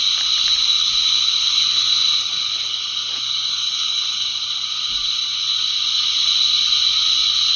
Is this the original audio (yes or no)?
yes